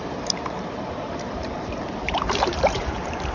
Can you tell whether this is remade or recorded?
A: remade